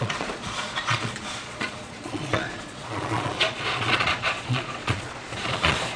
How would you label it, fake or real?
fake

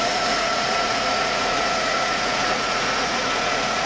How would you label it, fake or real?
fake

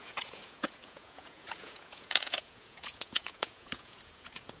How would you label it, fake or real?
fake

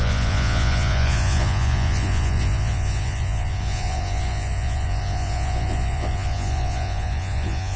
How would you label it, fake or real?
fake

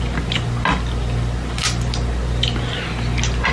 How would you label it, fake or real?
real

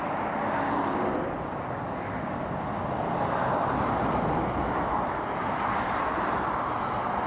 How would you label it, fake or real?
real